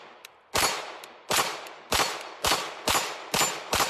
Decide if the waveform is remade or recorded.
recorded